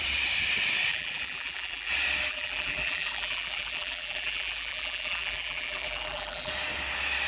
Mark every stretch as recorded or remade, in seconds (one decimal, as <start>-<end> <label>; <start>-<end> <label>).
0.0-0.9 recorded; 0.9-1.9 remade; 1.9-2.3 recorded; 2.3-6.5 remade; 6.5-7.3 recorded